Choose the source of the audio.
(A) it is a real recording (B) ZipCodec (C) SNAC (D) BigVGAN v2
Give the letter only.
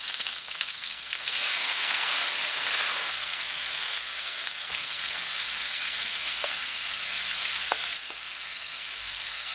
C